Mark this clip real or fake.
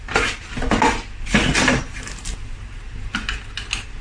real